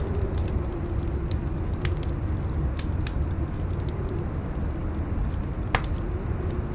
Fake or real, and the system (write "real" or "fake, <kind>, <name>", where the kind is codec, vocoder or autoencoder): real